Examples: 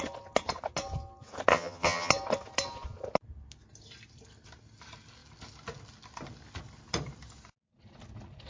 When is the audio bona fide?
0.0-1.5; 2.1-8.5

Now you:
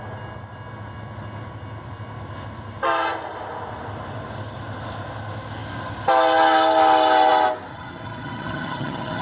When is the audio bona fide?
0.0-7.7

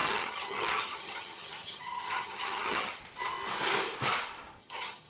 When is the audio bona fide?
3.0-4.6

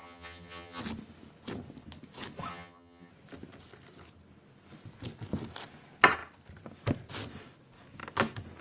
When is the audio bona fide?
0.8-2.5; 3.1-8.6